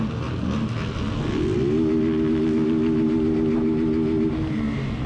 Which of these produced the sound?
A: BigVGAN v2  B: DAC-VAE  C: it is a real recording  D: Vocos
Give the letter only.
C